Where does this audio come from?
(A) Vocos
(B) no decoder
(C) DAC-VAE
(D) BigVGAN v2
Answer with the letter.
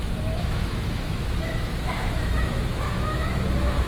C